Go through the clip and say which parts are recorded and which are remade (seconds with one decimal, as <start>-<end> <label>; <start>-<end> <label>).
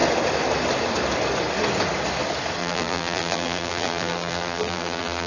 0.0-2.6 recorded; 2.6-5.3 remade